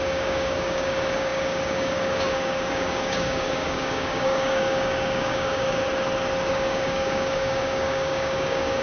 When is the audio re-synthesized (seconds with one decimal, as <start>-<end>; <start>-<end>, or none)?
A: 0.0-5.8; 6.5-8.8

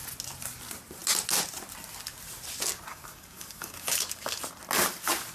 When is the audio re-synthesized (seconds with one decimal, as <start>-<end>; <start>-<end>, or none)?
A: 2.9-4.4

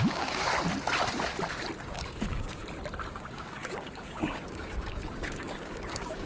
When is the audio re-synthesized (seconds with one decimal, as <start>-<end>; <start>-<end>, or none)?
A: 0.0-0.5; 1.8-2.6; 3.1-6.3

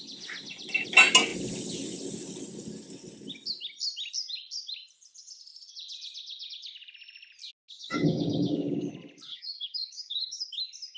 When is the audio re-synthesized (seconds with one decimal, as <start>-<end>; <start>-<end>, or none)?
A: 7.8-8.9; 9.3-10.6

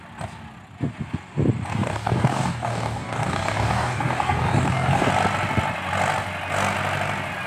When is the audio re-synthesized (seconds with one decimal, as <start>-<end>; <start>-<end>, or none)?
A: 1.7-5.1